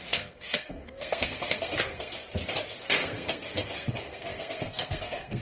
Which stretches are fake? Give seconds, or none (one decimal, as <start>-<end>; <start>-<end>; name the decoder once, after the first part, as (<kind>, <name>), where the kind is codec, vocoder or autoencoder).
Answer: 0.0-2.1 (codec, SNAC); 2.7-5.4